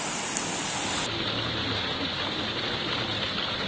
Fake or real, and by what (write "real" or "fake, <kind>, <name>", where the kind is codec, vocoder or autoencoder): real